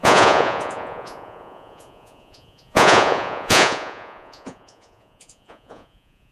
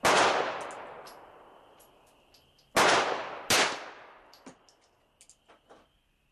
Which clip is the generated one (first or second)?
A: first